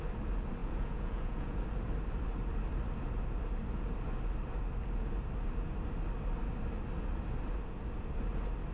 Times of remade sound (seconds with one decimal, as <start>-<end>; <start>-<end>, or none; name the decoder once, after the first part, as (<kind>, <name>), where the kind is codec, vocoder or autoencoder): 0.6-1.6 (vocoder, Vocos)